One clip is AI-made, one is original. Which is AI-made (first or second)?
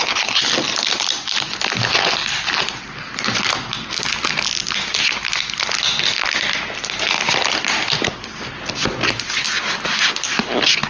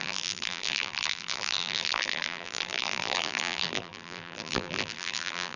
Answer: second